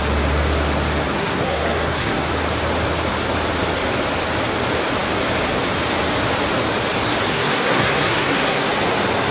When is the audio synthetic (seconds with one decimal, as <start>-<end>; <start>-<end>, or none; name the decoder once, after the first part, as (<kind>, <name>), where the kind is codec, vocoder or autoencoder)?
1.2-2.3 (codec, SNAC); 7.3-8.7